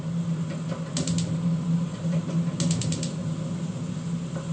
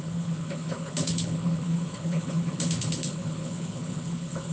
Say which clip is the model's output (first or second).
second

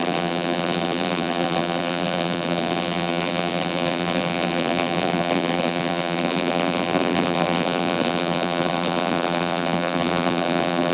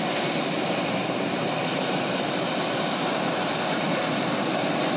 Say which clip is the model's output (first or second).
first